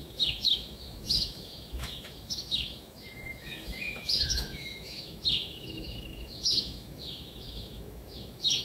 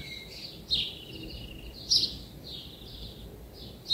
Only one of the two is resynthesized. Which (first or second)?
first